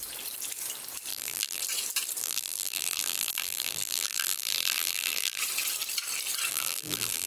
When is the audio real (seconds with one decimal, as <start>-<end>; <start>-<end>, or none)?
0.0-1.1; 1.6-2.2; 5.4-6.5